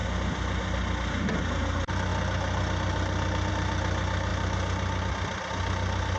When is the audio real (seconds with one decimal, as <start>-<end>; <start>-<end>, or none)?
0.0-6.2